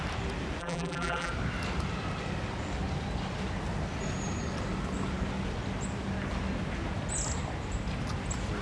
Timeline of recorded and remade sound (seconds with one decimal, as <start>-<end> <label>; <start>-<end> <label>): 0.0-0.6 recorded; 0.6-1.3 remade; 1.3-8.6 recorded